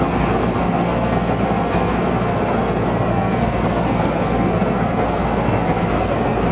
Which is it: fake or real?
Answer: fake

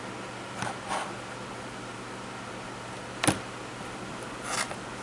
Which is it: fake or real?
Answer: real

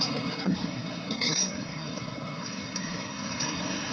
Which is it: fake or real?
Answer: fake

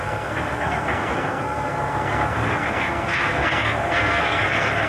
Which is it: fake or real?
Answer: fake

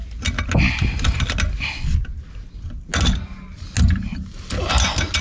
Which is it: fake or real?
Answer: real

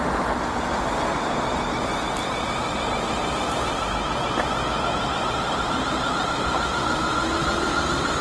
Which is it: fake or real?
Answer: real